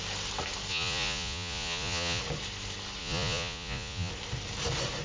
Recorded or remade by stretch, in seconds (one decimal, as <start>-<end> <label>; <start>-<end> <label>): 0.0-0.7 recorded; 0.7-2.2 remade; 2.2-3.0 recorded; 3.0-4.1 remade; 4.1-5.0 recorded